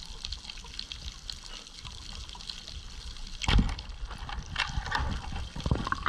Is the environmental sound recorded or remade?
recorded